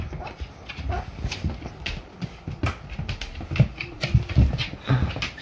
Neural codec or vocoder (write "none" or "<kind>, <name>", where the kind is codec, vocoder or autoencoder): none